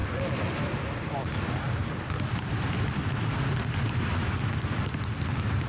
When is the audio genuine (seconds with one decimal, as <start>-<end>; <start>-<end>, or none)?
3.4-5.7